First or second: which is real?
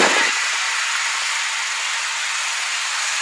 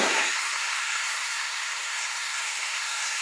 first